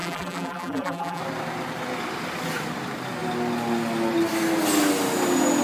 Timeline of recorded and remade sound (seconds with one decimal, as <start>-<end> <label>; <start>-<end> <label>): 0.0-1.2 remade; 1.2-5.6 recorded